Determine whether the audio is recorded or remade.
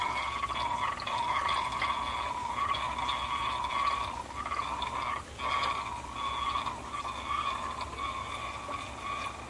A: recorded